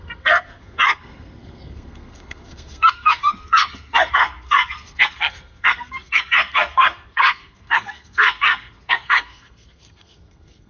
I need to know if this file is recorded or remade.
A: remade